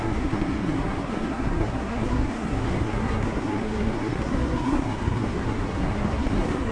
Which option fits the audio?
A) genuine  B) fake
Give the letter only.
B